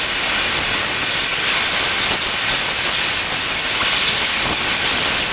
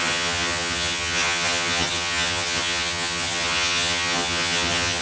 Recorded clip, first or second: first